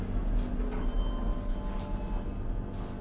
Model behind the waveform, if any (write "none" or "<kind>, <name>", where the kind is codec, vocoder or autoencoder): none